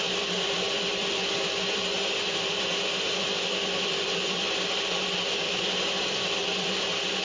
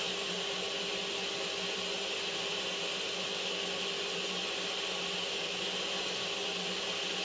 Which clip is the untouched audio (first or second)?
second